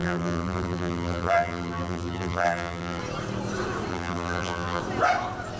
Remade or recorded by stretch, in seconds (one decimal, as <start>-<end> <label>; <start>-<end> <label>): 0.0-3.0 remade; 3.0-3.9 recorded; 3.9-4.8 remade; 4.8-5.6 recorded